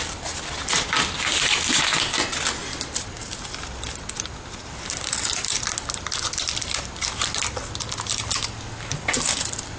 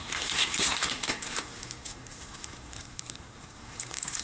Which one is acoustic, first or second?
first